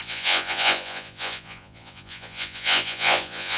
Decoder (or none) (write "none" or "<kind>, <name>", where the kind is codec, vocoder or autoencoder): vocoder, Vocos